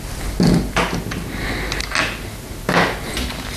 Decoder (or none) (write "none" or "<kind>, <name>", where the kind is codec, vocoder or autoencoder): none